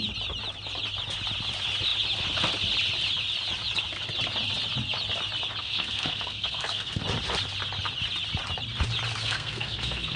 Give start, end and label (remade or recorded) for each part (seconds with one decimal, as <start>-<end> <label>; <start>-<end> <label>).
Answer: 0.0-5.6 recorded; 5.6-7.0 remade; 7.0-9.2 recorded; 9.2-10.2 remade